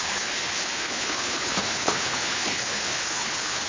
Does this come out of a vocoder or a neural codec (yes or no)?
yes